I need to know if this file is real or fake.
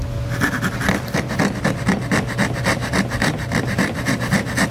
real